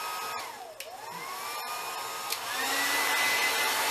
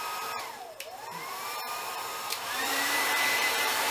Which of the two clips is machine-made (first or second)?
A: second